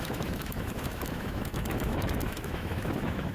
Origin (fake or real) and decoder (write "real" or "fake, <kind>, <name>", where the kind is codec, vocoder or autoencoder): fake, autoencoder, DAC-VAE